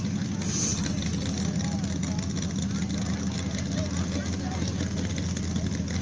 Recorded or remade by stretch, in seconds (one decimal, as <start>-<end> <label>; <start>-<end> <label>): 0.0-6.0 recorded